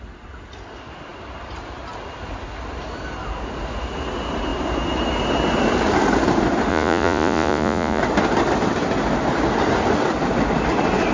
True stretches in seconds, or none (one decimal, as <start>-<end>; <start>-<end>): 0.0-6.7; 8.0-11.1